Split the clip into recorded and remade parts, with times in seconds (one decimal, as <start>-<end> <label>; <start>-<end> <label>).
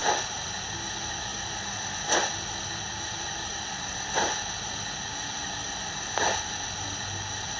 0.0-7.6 recorded